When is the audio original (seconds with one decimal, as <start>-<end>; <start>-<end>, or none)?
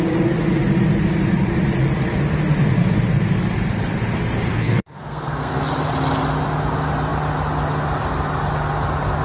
0.0-4.5; 5.6-9.2